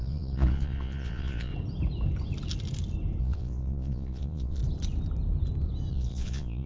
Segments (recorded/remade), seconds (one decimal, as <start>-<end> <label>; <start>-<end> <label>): 0.0-1.5 remade; 1.5-3.2 recorded; 3.2-4.6 remade; 4.6-5.9 recorded; 5.9-6.7 remade